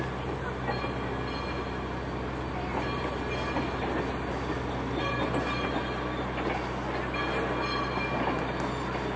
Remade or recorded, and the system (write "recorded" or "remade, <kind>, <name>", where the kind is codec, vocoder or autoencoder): recorded